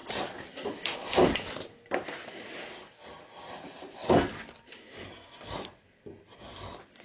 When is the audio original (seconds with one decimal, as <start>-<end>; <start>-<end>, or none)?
3.0-3.5